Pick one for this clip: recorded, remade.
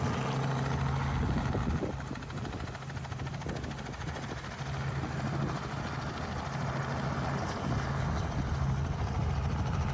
recorded